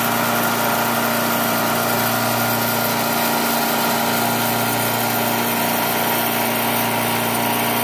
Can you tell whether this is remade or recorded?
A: recorded